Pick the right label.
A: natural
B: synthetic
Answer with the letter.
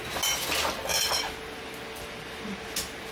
A